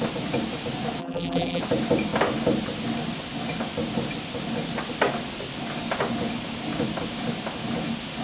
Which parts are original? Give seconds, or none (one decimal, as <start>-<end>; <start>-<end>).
0.0-1.0; 1.6-8.2